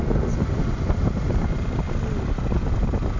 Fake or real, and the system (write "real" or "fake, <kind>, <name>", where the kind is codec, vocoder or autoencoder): real